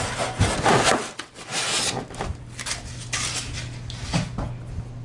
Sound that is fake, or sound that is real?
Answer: real